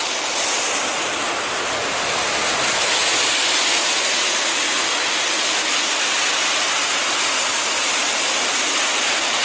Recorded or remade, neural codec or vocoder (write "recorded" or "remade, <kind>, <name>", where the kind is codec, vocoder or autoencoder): recorded